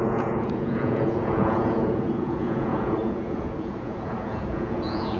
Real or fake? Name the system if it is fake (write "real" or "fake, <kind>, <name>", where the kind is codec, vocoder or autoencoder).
fake, vocoder, Vocos